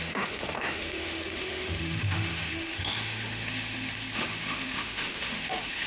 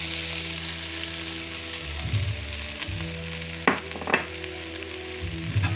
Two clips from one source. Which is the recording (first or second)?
second